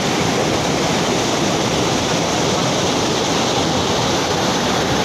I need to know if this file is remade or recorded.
remade